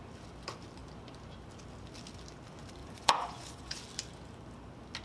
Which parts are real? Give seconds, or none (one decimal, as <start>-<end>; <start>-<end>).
0.0-2.8; 3.8-5.0